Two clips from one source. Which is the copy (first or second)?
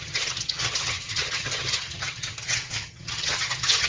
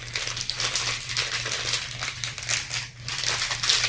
first